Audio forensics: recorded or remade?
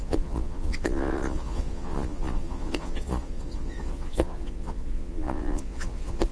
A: remade